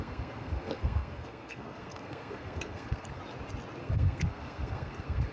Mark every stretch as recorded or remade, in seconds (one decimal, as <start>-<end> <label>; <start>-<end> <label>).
0.0-3.2 remade; 3.2-3.8 recorded; 3.8-5.3 remade